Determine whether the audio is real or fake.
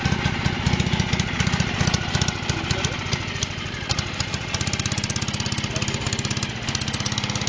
real